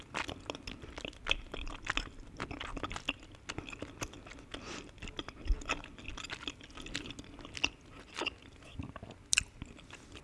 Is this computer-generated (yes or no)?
no